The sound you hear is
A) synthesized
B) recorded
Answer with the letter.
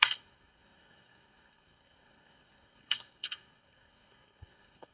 A